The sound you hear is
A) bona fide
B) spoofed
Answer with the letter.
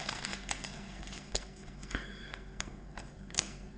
B